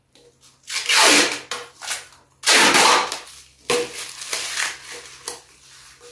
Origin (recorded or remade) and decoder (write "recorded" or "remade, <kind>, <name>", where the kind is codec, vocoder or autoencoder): recorded